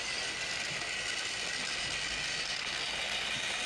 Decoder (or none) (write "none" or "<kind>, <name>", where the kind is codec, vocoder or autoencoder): none